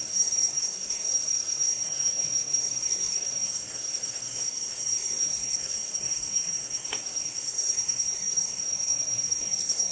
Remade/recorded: remade